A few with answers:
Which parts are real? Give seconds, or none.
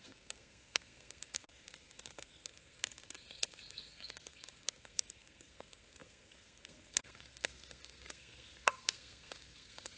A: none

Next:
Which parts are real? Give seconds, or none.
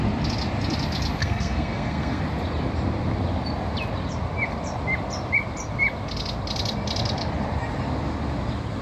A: 0.0-1.2; 2.2-8.8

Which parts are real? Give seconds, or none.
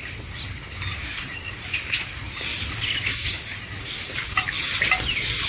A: 0.0-5.5